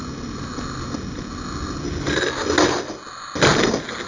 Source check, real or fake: real